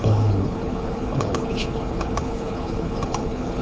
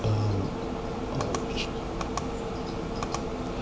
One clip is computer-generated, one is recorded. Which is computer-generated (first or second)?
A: first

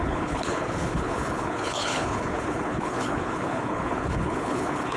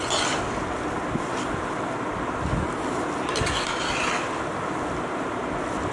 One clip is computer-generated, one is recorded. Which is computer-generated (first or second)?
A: first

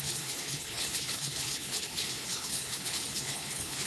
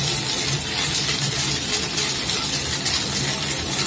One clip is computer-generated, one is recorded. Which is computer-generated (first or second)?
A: first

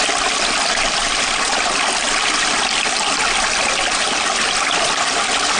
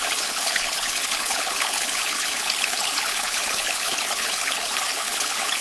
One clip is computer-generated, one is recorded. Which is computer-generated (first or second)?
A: second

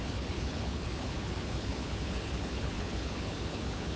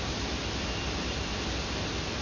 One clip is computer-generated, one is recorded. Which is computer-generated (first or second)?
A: first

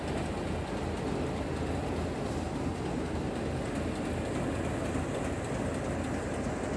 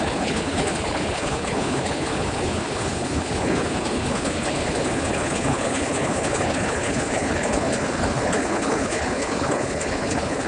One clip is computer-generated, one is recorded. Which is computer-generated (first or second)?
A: second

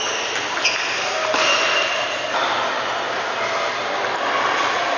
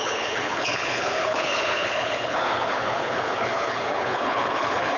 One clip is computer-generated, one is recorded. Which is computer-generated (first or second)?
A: second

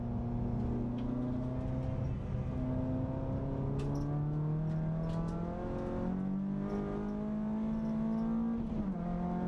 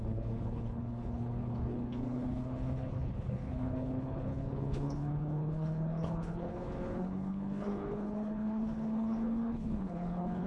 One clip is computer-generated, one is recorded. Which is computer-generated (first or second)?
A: second